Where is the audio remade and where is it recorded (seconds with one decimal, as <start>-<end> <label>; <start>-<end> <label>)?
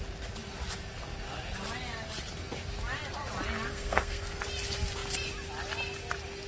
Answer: 0.0-3.7 recorded; 3.7-4.4 remade; 4.4-6.5 recorded